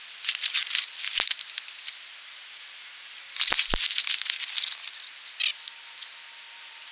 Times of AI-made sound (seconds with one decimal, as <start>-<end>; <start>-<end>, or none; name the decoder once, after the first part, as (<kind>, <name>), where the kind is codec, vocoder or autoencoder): none